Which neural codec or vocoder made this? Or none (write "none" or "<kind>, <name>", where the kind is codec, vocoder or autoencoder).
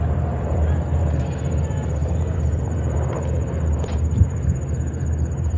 vocoder, BigVGAN v2